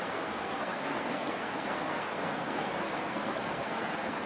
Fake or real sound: fake